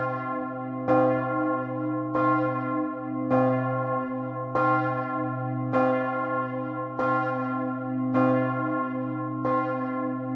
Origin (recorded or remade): recorded